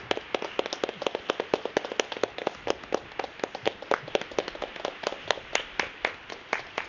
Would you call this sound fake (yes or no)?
no